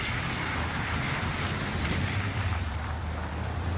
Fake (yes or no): yes